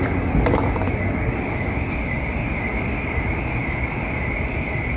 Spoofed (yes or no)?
no